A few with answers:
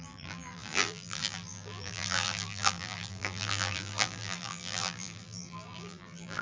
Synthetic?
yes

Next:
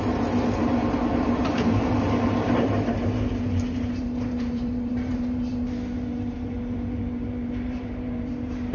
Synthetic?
yes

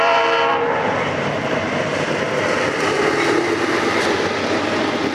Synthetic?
yes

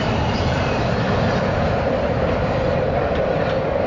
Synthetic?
yes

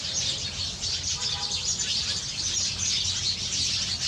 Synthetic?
no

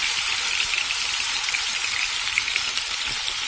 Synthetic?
yes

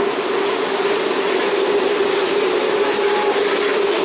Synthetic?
no